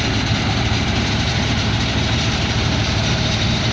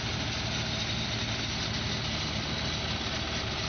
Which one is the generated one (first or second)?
first